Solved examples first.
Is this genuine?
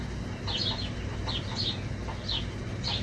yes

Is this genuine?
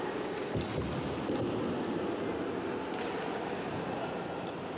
yes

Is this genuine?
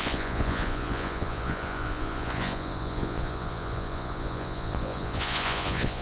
no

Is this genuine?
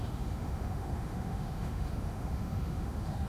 no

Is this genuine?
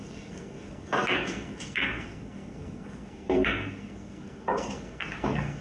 no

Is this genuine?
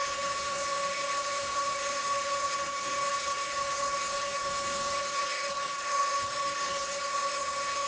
no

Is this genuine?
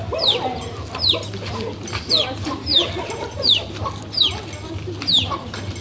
yes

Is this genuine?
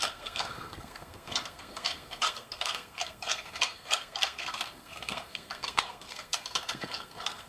no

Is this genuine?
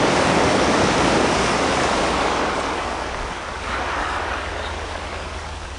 no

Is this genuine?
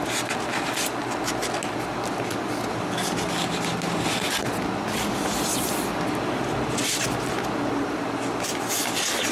yes